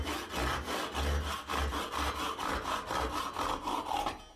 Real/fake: real